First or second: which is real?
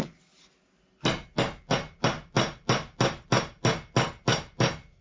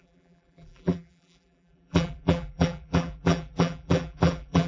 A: first